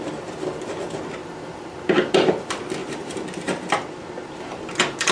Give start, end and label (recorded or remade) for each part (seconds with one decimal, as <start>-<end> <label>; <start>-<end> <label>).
0.0-5.1 recorded